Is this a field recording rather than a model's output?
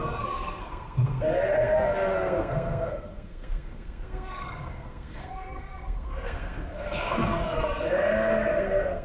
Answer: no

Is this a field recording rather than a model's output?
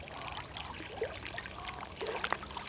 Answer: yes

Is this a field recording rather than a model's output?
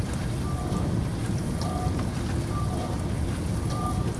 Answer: yes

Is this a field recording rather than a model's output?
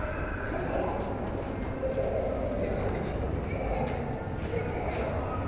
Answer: yes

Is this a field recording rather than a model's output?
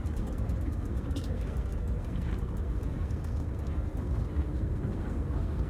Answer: no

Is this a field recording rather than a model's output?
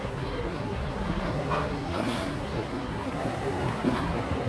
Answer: no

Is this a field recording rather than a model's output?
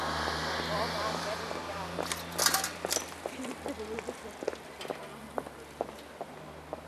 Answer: yes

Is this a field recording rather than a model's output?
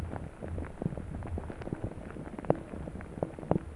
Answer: yes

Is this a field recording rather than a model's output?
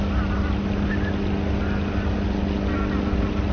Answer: yes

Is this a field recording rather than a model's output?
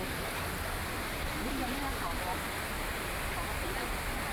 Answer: yes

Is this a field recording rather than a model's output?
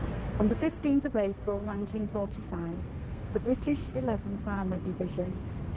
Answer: no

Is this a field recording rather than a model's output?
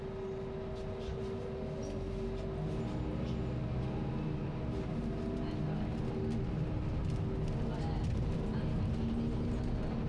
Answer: yes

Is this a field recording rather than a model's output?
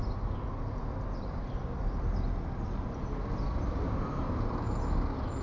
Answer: yes